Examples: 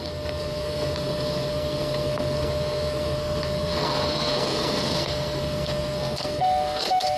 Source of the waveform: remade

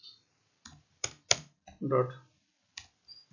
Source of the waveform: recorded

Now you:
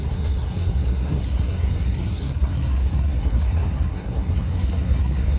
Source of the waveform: remade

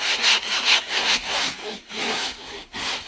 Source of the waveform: remade